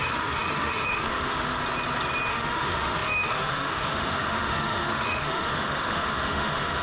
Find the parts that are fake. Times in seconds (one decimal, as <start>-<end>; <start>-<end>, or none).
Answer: 0.0-1.6; 2.3-6.8